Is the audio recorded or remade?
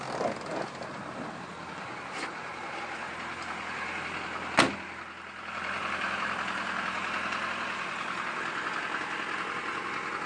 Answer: recorded